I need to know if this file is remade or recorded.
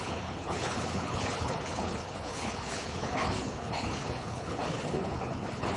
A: remade